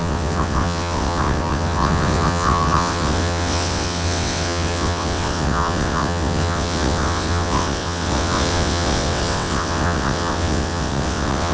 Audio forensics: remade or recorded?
remade